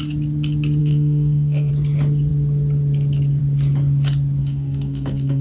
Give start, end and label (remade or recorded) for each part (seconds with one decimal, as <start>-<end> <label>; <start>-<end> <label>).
0.0-0.8 recorded; 0.8-1.7 remade; 1.7-4.4 recorded; 4.4-5.4 remade